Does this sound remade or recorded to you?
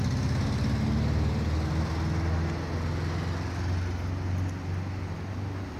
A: recorded